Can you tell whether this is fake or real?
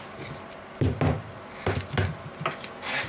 real